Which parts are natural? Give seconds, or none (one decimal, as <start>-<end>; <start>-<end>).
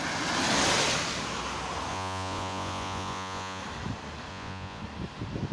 0.0-1.9; 3.6-4.3; 4.8-5.5